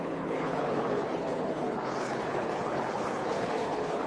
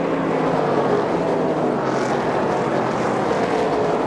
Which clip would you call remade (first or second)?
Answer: first